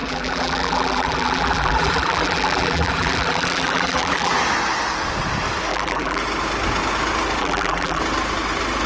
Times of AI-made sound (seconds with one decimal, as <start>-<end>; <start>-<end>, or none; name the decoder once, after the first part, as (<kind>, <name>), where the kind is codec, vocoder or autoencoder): 0.0-4.3 (vocoder, BigVGAN v2); 5.7-6.2; 7.4-8.0